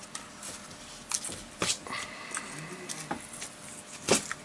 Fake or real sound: real